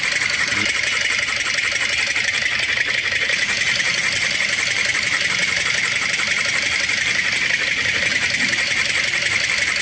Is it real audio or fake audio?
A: real